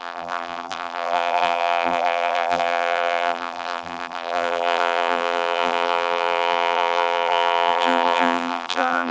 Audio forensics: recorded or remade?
remade